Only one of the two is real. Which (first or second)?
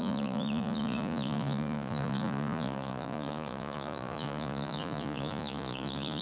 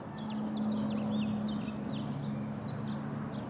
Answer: second